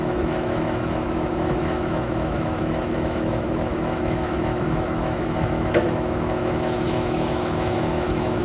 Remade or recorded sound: remade